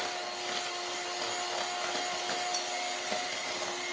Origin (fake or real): real